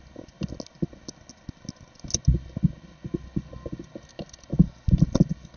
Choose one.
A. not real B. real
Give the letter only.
B